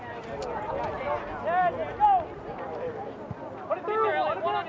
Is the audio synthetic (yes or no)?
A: no